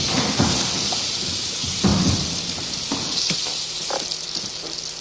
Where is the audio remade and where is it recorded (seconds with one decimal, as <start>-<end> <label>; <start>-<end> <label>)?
0.0-5.0 recorded